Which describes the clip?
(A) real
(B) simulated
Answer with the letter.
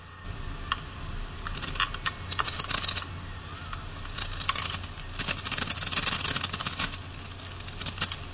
A